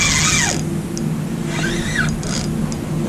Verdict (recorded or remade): recorded